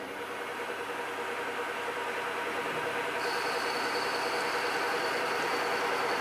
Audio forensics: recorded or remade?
recorded